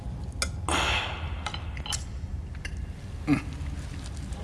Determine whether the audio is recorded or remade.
recorded